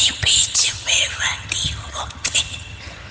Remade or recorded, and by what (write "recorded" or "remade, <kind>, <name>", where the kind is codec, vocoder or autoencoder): remade, vocoder, HiFi-GAN